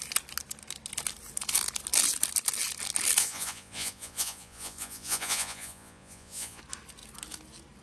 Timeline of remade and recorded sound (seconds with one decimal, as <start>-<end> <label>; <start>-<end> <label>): 0.0-3.2 recorded; 3.2-6.6 remade; 6.6-7.8 recorded